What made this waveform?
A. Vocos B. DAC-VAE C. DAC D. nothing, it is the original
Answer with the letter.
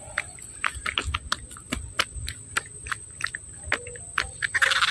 D